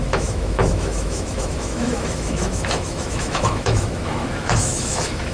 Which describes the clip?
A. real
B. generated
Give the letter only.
B